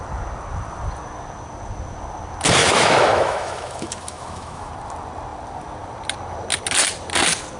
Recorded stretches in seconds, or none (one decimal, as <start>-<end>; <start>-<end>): 0.0-2.6; 4.7-7.6

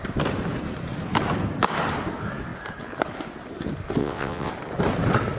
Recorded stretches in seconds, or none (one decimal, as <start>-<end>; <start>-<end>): 0.0-4.0; 4.5-5.4

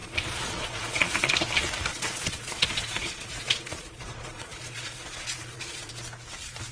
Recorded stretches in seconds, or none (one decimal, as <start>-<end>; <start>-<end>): 1.3-1.9; 5.9-6.7

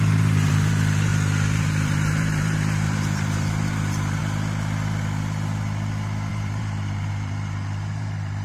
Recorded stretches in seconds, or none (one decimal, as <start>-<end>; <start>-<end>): 1.1-1.6; 4.2-6.3

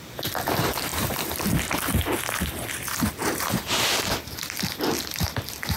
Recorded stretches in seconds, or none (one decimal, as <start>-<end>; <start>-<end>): 0.0-5.8

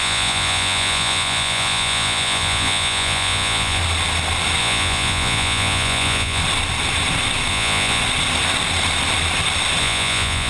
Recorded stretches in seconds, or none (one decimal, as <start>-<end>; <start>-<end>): 3.8-4.6; 6.4-7.5; 8.0-9.8

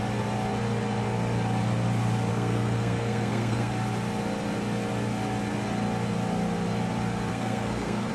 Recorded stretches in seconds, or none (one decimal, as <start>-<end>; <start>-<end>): 0.0-2.3; 3.7-7.3